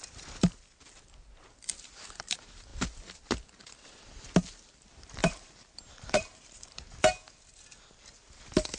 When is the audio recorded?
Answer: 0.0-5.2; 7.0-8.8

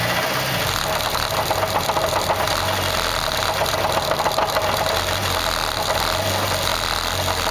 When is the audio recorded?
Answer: 0.0-7.5

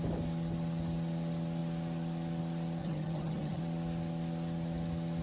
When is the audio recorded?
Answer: 0.0-2.8; 3.6-5.2

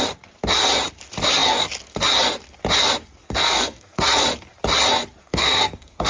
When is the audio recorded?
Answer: 0.0-3.2; 4.0-5.2

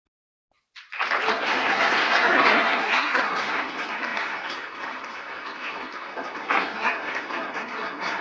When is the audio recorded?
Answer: 0.4-1.3